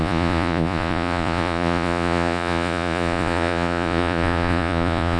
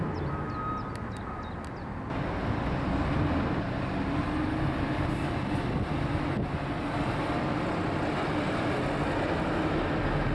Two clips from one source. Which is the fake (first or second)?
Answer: first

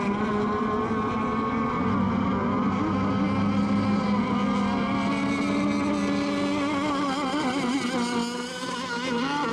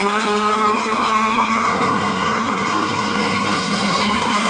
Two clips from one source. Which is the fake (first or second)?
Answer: second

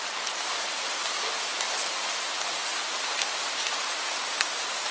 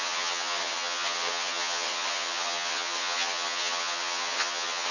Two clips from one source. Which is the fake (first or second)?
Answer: second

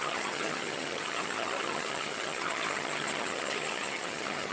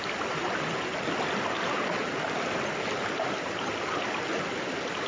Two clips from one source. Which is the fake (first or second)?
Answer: first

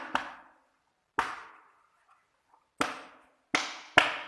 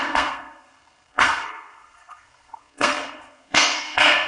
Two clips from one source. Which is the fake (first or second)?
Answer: second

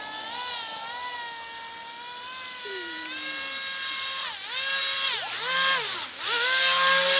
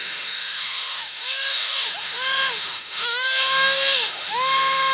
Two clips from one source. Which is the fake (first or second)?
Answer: second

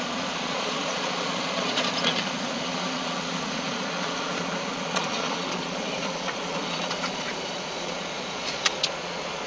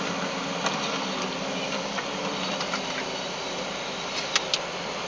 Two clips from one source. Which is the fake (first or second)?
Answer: first